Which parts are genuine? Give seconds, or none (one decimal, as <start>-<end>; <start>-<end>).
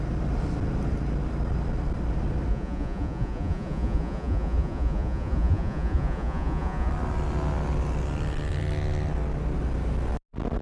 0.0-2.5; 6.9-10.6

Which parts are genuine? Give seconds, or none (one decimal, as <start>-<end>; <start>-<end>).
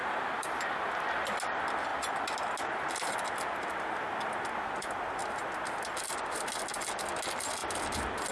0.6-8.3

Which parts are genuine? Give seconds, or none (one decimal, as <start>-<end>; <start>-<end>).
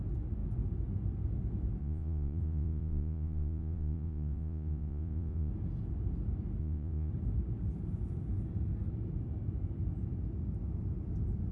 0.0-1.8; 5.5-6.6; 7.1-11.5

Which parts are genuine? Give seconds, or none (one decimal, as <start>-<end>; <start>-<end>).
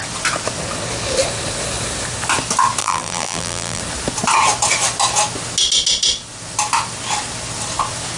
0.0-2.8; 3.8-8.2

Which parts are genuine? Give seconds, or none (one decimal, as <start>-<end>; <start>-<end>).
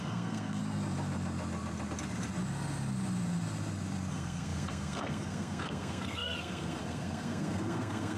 0.6-4.1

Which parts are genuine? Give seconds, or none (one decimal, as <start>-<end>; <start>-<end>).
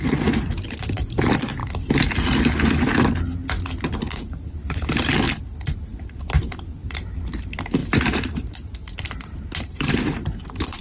1.6-4.0; 5.1-5.7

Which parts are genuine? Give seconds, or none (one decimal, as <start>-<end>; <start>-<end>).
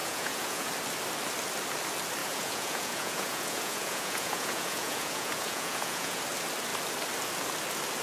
0.7-2.2; 6.2-8.0